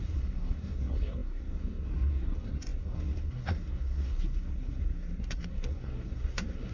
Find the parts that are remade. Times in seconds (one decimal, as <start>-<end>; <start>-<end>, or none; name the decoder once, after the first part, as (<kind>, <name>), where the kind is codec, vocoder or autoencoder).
0.0-6.7 (codec, SNAC)